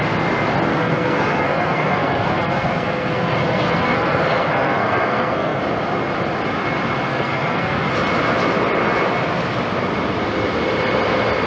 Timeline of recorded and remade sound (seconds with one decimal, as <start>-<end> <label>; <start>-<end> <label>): 0.0-0.7 recorded; 0.7-5.6 remade; 5.6-7.1 recorded; 7.1-7.9 remade; 7.9-11.5 recorded